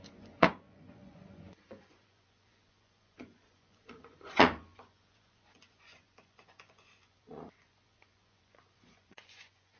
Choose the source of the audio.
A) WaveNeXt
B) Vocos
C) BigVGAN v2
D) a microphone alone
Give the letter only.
B